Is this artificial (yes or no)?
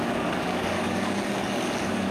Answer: yes